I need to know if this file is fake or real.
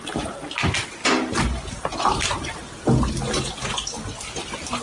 real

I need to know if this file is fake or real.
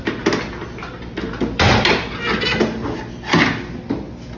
real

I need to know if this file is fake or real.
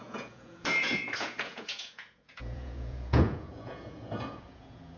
fake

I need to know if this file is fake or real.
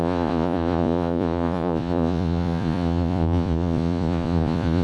fake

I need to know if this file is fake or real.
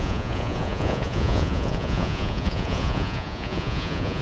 fake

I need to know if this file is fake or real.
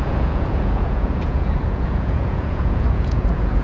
fake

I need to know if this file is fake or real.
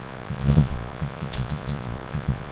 fake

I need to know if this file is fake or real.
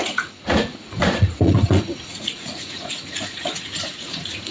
fake